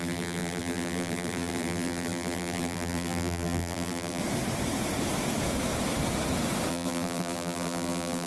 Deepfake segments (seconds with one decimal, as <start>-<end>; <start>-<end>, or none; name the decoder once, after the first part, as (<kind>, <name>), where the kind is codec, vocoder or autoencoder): 0.0-4.2 (vocoder, BigVGAN v2); 6.7-8.3